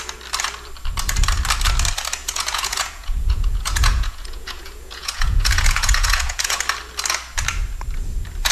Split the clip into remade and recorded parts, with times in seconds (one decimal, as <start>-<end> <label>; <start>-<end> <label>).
0.0-2.2 recorded; 2.2-6.6 remade; 6.6-8.5 recorded

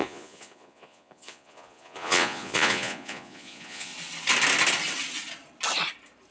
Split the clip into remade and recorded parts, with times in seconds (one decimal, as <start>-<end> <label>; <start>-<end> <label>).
0.0-3.9 remade; 3.9-6.3 recorded

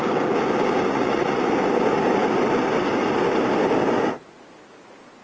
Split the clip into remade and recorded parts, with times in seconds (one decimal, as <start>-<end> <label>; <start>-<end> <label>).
0.0-0.9 recorded; 0.9-1.5 remade; 1.5-5.2 recorded

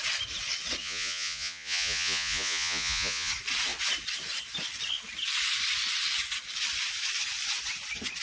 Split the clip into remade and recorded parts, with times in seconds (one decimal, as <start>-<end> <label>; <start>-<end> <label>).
0.0-0.8 recorded; 0.8-3.3 remade; 3.3-8.2 recorded

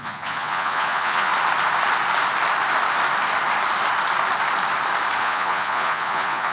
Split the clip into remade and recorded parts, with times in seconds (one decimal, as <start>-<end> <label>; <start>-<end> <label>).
0.0-1.3 remade; 1.3-5.2 recorded; 5.2-6.5 remade

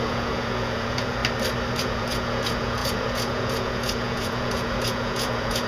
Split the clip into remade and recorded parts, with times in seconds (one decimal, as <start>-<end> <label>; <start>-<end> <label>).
0.0-1.2 remade; 1.2-1.8 recorded; 1.8-5.7 remade